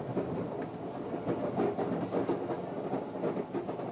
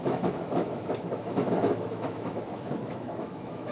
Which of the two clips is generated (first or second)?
second